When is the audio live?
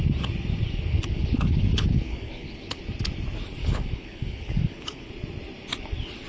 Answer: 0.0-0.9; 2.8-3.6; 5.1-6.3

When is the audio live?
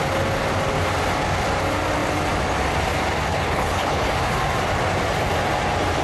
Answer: 0.0-3.3; 4.1-6.0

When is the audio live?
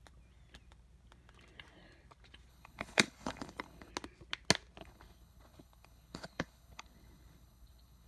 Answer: 0.0-2.5; 3.9-4.8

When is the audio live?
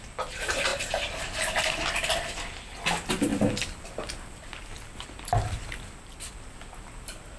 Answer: 0.0-7.4